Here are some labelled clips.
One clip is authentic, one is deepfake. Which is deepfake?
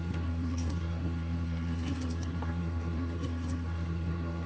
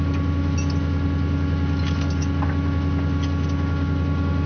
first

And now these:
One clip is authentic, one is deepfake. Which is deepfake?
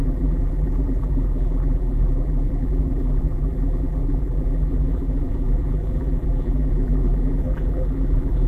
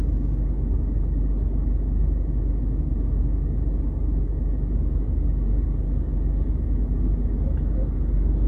first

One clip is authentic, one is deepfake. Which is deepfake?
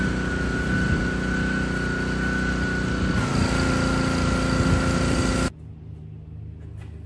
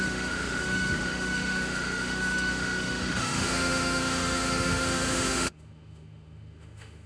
second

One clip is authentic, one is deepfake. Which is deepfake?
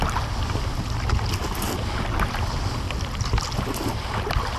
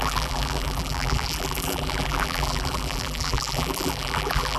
second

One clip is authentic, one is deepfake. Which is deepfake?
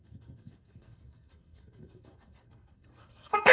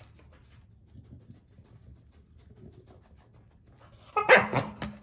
first